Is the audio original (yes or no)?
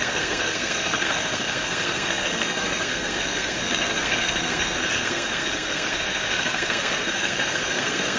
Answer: no